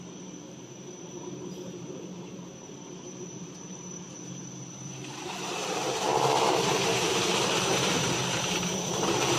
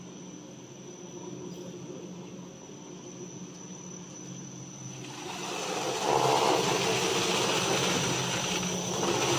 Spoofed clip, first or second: first